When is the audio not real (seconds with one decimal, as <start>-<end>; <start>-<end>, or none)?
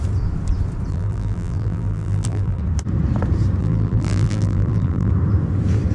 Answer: 0.9-2.6; 3.6-5.1